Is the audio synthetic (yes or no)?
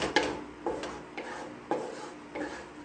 no